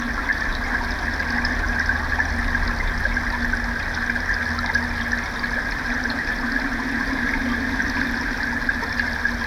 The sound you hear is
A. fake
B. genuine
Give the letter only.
B